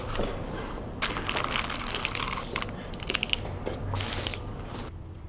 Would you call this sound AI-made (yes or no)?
yes